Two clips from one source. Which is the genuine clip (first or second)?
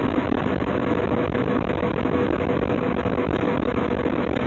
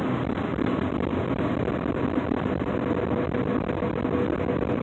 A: second